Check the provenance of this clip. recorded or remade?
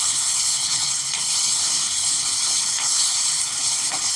remade